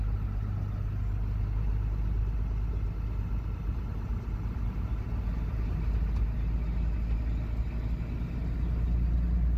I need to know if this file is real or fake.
real